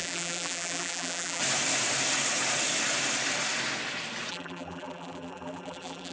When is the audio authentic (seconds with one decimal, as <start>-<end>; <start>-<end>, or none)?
1.4-4.3